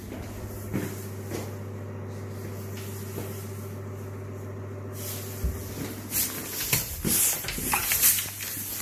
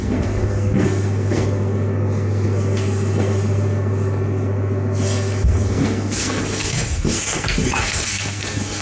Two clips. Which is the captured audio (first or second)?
first